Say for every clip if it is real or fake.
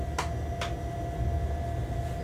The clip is real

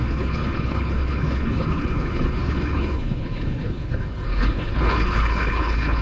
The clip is fake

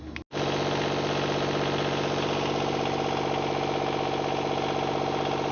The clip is real